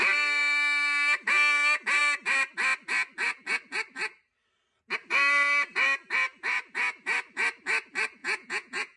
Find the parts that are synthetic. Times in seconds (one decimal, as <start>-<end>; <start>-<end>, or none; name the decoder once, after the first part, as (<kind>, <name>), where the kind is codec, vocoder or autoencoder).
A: 8.2-9.0 (vocoder, Vocos)